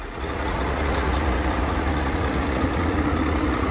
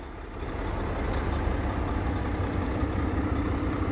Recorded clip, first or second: second